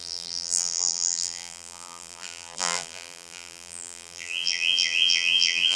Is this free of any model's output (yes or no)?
no